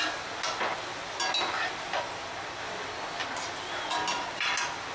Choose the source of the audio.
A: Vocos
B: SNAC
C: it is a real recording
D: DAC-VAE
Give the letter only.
C